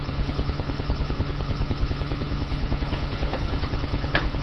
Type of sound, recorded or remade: remade